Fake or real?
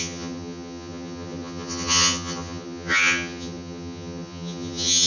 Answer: fake